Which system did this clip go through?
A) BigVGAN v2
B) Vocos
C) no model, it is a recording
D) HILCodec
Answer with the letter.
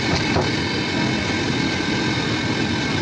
C